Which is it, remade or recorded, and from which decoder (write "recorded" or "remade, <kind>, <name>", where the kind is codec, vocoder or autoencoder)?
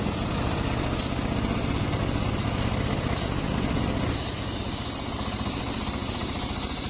recorded